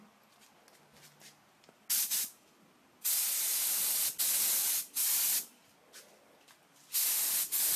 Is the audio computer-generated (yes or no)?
no